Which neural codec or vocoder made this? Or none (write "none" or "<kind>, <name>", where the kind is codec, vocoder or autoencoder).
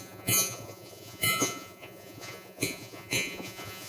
vocoder, Vocos